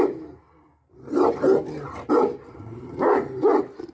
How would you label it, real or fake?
real